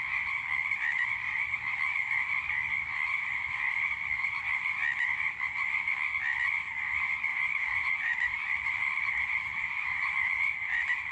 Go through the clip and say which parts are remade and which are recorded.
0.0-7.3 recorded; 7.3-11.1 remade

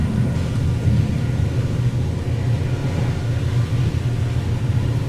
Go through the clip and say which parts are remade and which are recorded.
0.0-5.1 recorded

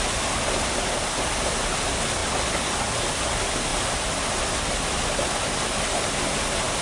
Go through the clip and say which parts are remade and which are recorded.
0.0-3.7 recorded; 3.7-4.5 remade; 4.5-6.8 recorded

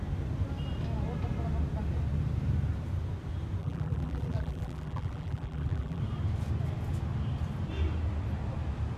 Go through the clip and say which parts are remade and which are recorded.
0.0-3.6 recorded; 3.6-6.0 remade; 6.0-9.0 recorded

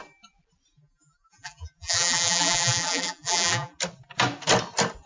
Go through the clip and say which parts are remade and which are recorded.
0.0-0.7 recorded; 0.7-3.8 remade; 3.8-5.1 recorded

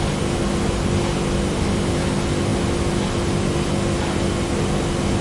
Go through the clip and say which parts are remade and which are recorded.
0.0-5.2 recorded

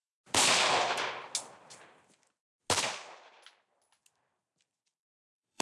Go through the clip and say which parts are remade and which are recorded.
0.0-4.7 recorded; 4.7-5.6 remade

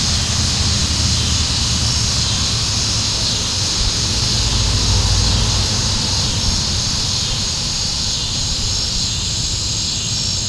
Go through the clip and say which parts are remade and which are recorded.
0.0-5.8 recorded; 5.8-9.2 remade; 9.2-10.5 recorded